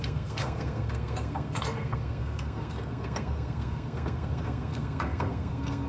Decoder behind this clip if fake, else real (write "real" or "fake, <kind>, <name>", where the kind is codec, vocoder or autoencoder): fake, codec, SNAC